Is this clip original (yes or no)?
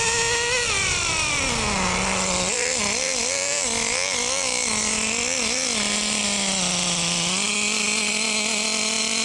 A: yes